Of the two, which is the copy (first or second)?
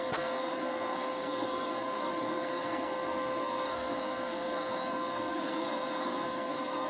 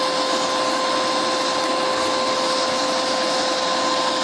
first